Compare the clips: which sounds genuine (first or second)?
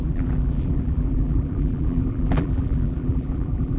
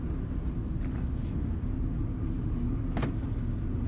second